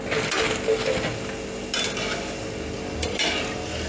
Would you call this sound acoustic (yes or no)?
yes